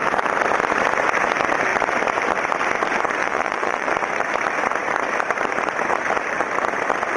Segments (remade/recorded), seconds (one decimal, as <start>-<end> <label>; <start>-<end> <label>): 0.0-3.2 recorded; 3.2-3.9 remade; 3.9-7.2 recorded